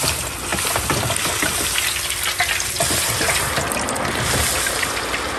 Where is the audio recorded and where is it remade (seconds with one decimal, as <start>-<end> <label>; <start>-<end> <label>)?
0.0-5.4 recorded